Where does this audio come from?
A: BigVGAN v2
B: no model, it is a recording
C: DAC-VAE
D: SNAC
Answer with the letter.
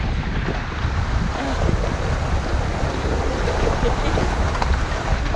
B